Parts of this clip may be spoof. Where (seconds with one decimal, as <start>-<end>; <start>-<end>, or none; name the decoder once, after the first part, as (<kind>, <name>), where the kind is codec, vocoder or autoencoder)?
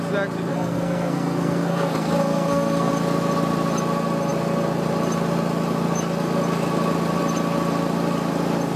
0.5-2.9 (codec, SNAC)